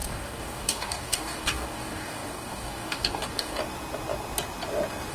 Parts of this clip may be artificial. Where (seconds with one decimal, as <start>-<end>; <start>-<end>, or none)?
0.0-3.6